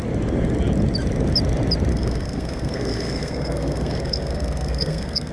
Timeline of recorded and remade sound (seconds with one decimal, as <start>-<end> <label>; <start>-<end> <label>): 0.0-1.9 recorded; 1.9-5.3 remade